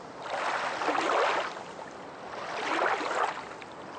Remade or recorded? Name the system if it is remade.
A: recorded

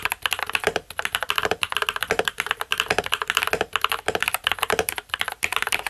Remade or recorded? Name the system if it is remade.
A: remade, vocoder, BigVGAN v2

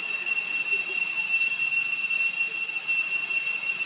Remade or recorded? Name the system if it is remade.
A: recorded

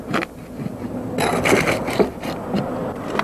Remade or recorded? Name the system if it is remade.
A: recorded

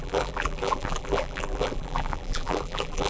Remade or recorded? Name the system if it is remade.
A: remade, vocoder, BigVGAN v2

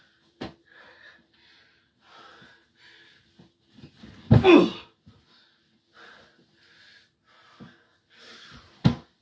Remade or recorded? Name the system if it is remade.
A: recorded